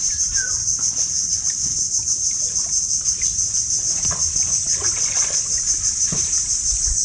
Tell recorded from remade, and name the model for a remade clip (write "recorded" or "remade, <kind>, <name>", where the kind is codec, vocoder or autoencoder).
remade, vocoder, BigVGAN v2